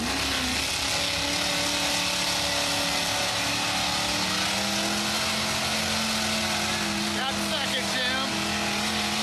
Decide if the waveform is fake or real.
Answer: real